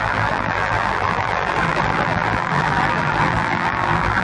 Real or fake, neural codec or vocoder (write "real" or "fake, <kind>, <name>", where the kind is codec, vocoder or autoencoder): fake, vocoder, BigVGAN v2